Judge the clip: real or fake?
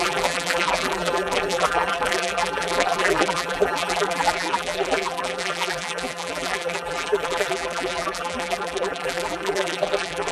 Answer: fake